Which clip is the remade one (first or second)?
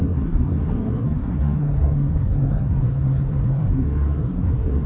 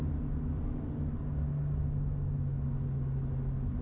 first